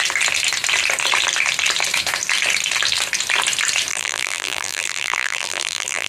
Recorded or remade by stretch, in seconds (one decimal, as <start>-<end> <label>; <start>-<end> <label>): 0.0-3.9 recorded; 3.9-6.1 remade